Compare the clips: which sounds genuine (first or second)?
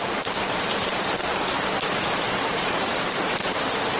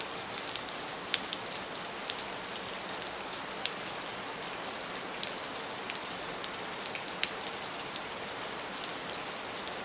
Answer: second